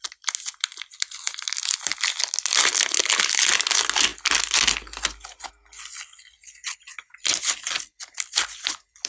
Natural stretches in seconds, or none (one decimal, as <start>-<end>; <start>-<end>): 0.0-9.1